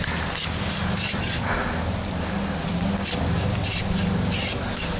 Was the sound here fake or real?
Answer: real